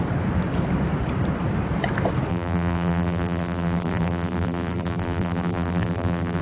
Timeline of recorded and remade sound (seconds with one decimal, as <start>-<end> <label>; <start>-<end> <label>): 0.0-2.3 recorded; 2.3-6.4 remade